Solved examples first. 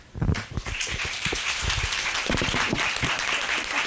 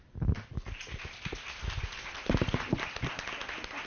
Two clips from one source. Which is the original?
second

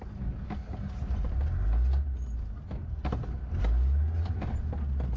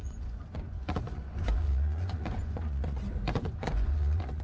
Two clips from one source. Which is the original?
first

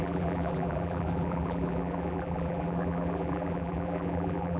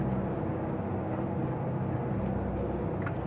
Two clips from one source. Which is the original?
second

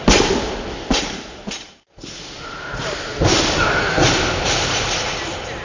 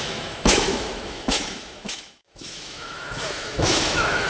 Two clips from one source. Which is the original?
first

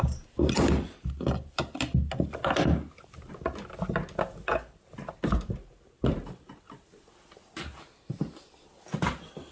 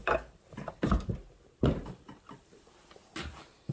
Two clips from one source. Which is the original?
first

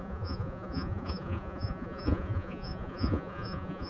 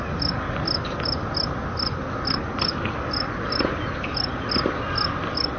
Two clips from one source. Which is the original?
second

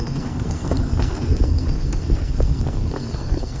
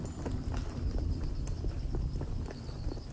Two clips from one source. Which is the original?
second